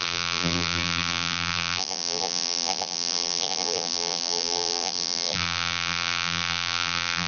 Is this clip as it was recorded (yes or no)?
no